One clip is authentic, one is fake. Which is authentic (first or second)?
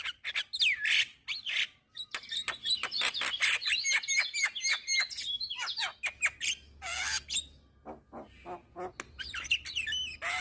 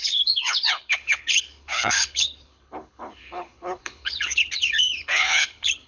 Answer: first